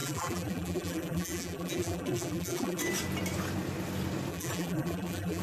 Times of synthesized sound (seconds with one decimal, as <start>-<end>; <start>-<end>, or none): 0.0-2.8; 4.3-5.4